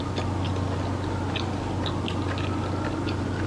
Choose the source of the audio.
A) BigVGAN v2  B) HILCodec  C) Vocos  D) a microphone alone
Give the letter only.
D